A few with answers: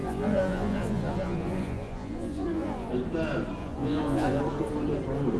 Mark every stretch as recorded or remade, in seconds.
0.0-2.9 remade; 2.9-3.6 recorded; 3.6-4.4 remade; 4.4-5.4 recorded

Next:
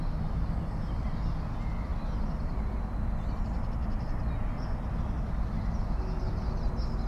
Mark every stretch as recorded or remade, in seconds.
0.0-7.1 recorded

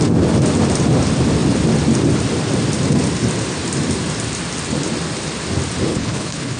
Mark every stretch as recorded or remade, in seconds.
0.0-5.9 recorded; 5.9-6.6 remade

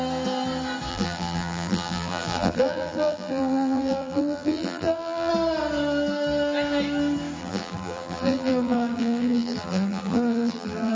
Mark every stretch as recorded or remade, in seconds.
0.0-0.9 recorded; 0.9-5.3 remade; 5.3-7.4 recorded; 7.4-10.9 remade

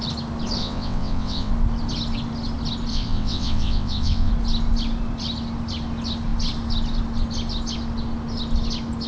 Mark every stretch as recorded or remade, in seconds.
0.0-0.6 recorded; 0.6-1.5 remade; 1.5-2.9 recorded; 2.9-4.3 remade; 4.3-9.1 recorded